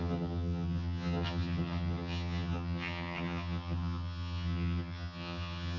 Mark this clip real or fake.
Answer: fake